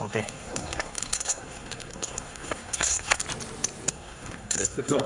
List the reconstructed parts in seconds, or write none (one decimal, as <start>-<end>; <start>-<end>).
0.0-3.2; 3.9-5.1